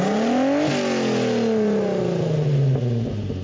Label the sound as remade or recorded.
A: recorded